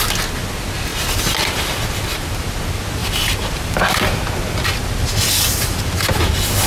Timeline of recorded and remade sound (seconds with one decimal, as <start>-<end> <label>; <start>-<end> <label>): 0.0-3.0 recorded; 3.0-3.9 remade; 3.9-6.7 recorded